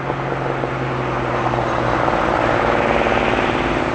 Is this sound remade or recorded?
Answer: recorded